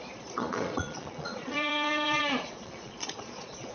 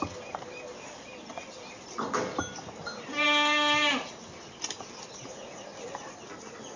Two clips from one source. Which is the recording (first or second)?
second